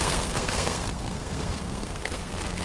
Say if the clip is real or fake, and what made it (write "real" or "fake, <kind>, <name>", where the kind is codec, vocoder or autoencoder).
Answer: fake, codec, SNAC